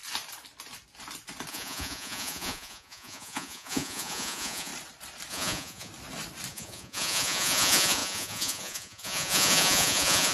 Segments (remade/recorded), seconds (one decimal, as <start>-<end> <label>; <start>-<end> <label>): 0.0-1.5 recorded; 1.5-4.7 remade; 4.7-5.3 recorded; 5.3-5.9 remade; 5.9-6.5 recorded; 6.5-10.3 remade